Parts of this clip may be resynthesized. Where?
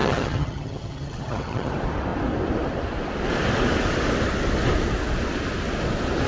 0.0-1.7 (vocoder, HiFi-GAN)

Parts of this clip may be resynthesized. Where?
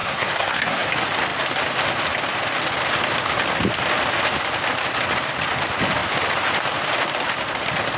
0.0-0.9 (codec, SNAC)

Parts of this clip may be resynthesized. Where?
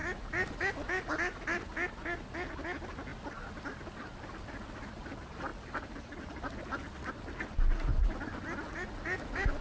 none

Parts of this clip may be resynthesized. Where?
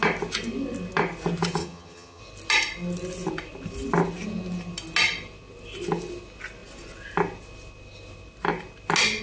1.6-2.2 (vocoder, HiFi-GAN)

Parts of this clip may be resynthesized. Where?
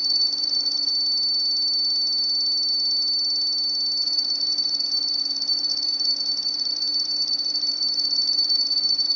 0.0-0.9 (vocoder, Vocos); 4.0-9.2